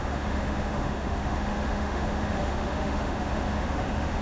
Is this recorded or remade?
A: remade